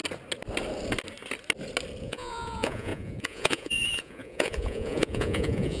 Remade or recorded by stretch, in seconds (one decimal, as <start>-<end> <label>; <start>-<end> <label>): 0.0-2.0 recorded; 2.0-5.8 remade